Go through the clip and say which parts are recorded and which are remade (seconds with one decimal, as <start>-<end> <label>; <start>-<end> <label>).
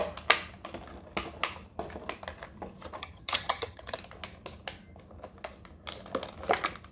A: 0.0-3.0 recorded; 3.0-4.0 remade; 4.0-6.9 recorded